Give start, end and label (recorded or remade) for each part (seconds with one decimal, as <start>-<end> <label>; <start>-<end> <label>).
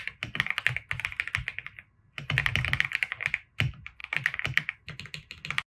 0.0-5.7 recorded